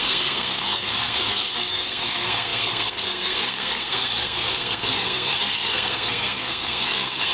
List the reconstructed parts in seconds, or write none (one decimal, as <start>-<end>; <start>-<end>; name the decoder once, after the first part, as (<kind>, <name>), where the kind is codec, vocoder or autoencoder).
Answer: 0.0-7.3 (codec, SNAC)